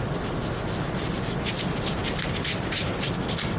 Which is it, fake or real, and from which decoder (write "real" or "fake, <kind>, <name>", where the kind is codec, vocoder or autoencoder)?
real